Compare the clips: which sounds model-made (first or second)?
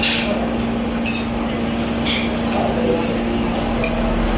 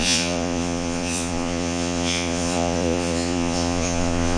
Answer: second